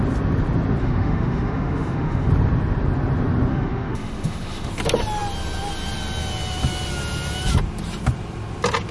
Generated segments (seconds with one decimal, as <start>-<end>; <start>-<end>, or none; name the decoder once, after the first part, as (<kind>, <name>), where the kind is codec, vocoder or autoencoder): 0.8-2.3 (autoencoder, DAC-VAE); 3.5-4.7